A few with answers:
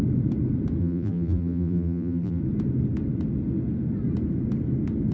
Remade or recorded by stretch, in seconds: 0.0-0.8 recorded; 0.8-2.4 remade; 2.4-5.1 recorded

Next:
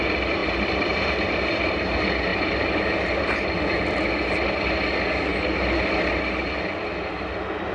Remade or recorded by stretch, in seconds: 0.0-0.4 recorded; 0.4-1.6 remade; 1.6-2.3 recorded; 2.3-3.5 remade; 3.5-7.7 recorded